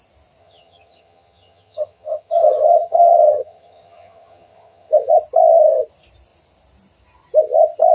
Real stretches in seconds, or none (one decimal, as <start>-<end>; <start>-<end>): 0.0-0.4; 5.1-7.9